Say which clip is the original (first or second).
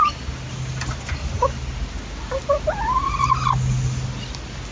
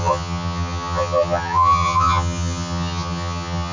first